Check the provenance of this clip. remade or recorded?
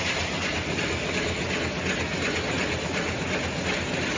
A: recorded